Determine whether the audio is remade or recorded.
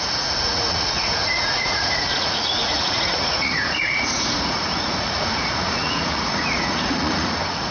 remade